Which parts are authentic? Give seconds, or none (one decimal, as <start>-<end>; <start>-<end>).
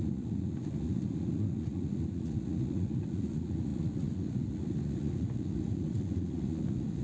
none